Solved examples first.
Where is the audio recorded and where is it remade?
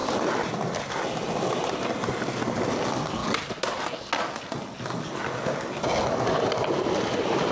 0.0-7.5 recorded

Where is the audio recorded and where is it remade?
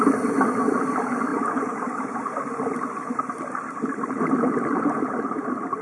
0.0-5.8 recorded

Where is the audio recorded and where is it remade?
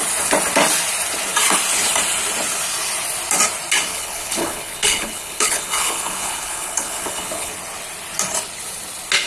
0.0-3.9 recorded; 3.9-7.5 remade; 7.5-9.3 recorded